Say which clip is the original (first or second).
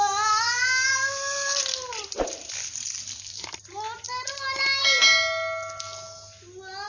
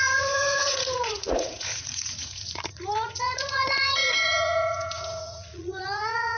first